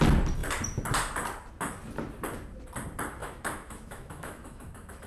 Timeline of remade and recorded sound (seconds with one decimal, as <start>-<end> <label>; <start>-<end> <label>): 0.0-3.2 recorded; 3.2-5.1 remade